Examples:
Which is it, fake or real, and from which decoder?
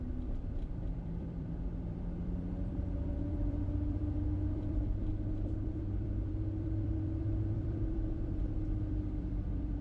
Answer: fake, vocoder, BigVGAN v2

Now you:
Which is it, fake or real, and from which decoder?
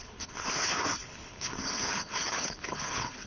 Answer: fake, codec, HILCodec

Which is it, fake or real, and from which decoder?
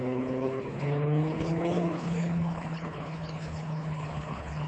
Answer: fake, codec, HILCodec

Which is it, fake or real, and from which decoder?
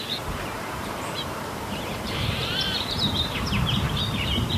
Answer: fake, vocoder, BigVGAN v2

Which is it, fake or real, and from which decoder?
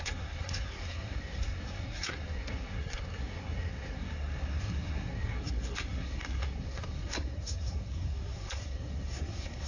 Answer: fake, codec, SNAC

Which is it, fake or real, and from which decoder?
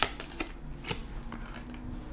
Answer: real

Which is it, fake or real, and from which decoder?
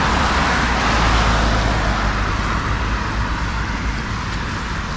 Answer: real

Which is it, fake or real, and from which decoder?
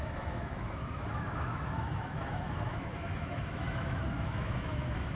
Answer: fake, autoencoder, DAC-VAE